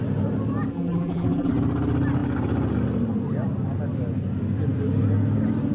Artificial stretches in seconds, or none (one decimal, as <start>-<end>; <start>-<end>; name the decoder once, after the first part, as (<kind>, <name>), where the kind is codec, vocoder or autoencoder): 0.7-1.5 (vocoder, BigVGAN v2)

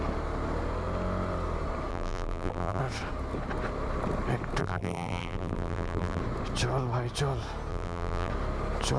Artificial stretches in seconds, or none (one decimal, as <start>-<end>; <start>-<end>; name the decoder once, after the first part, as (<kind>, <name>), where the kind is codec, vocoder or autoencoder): 1.9-2.8 (vocoder, BigVGAN v2); 4.6-6.2; 7.7-8.3